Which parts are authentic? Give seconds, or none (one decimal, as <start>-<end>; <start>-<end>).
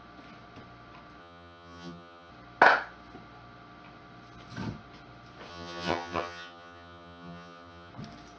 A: 0.0-1.2; 2.3-5.5; 7.9-8.4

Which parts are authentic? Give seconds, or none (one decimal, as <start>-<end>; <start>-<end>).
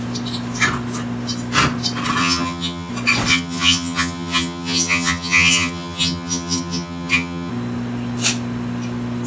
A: 0.0-2.2; 2.9-3.3; 7.5-9.3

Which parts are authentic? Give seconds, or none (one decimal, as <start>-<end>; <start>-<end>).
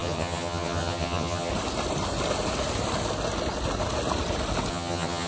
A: 1.5-4.7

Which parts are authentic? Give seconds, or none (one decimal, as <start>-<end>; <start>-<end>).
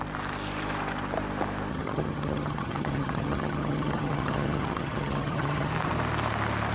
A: 0.0-1.7; 5.7-6.7